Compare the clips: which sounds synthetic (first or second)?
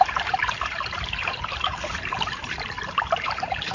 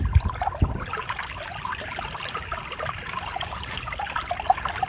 first